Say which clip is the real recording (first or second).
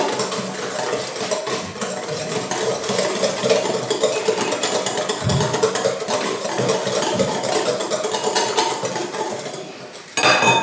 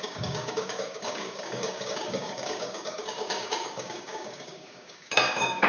first